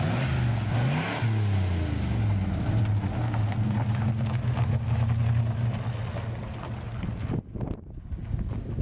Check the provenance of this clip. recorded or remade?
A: recorded